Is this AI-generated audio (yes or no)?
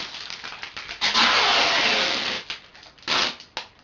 no